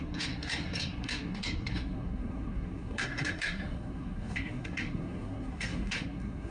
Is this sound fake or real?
fake